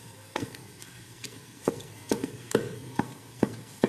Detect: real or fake fake